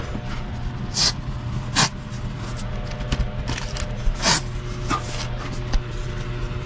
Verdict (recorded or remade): recorded